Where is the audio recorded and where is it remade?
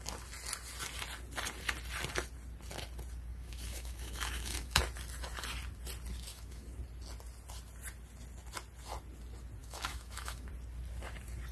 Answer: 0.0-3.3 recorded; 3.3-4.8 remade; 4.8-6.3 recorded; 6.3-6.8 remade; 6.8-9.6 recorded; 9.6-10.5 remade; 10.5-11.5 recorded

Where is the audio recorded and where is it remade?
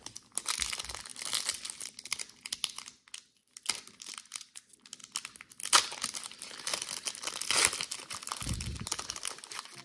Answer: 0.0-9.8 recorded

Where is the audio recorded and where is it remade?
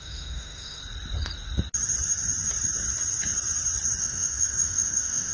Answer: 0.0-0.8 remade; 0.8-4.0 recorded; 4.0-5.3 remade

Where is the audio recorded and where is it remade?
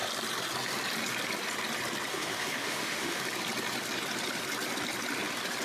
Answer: 0.0-2.1 recorded; 2.1-3.2 remade; 3.2-5.6 recorded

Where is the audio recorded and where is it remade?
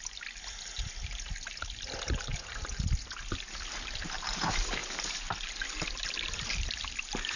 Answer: 0.0-7.4 recorded